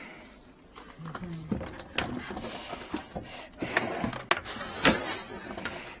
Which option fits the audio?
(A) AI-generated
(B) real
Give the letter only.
B